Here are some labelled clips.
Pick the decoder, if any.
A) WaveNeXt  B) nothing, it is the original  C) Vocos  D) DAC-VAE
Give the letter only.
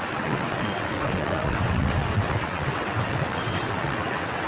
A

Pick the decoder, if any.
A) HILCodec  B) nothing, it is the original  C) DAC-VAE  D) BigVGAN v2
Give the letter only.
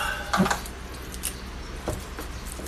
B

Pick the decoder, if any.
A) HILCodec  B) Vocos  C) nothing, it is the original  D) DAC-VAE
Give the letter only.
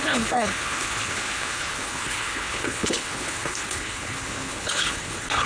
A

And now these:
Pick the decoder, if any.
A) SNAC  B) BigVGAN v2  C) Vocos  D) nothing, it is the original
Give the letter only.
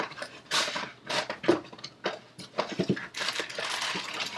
D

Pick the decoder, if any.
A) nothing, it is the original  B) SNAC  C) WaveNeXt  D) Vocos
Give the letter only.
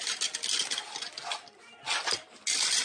A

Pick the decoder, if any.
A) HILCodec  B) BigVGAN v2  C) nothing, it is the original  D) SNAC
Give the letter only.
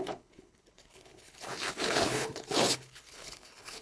A